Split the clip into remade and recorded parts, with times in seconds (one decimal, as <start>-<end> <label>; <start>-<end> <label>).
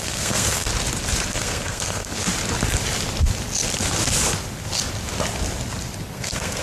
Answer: 0.0-0.7 remade; 0.7-1.3 recorded; 1.3-2.1 remade; 2.1-6.1 recorded; 6.1-6.6 remade